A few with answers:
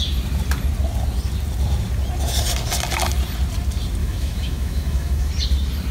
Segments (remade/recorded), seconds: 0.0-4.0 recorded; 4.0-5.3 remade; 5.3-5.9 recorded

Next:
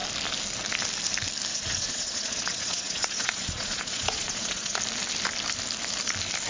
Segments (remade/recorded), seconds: 0.0-1.5 recorded; 1.5-4.8 remade; 4.8-6.5 recorded

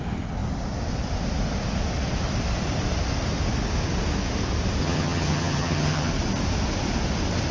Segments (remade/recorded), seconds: 0.0-4.8 recorded; 4.8-6.1 remade; 6.1-7.5 recorded

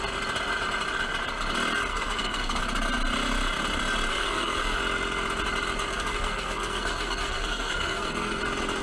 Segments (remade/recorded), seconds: 0.0-1.9 recorded; 1.9-2.6 remade; 2.6-4.1 recorded; 4.1-4.8 remade; 4.8-5.9 recorded; 5.9-8.4 remade; 8.4-8.8 recorded

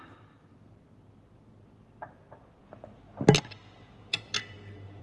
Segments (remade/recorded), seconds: 0.0-4.1 recorded; 4.1-5.0 remade